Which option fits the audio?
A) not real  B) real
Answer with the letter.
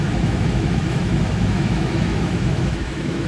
A